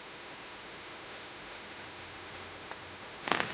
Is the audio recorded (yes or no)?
no